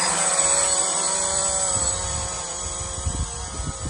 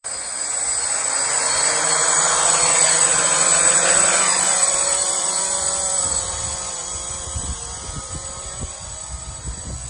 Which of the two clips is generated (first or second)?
second